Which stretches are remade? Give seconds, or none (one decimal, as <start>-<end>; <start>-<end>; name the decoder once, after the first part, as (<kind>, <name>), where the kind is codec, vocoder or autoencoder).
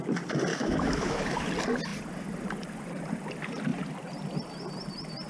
0.5-1.5 (autoencoder, DAC-VAE)